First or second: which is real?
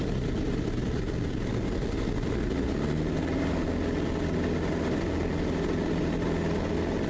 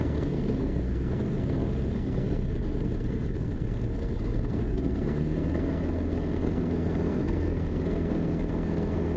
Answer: first